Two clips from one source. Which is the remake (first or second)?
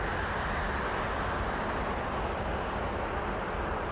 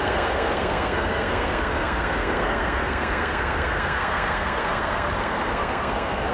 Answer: second